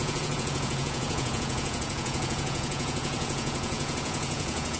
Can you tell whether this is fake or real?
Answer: fake